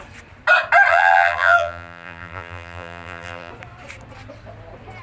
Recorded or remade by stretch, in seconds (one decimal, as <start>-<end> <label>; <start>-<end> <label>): 0.0-0.9 recorded; 0.9-3.5 remade; 3.5-5.0 recorded